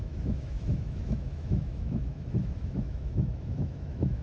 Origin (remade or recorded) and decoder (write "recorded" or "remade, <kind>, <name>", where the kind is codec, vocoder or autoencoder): remade, autoencoder, DAC-VAE